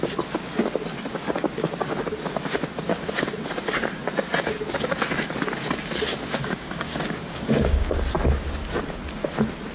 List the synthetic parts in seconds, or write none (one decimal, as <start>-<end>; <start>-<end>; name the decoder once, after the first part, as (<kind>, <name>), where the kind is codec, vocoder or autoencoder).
2.9-3.5 (codec, DAC); 6.1-8.0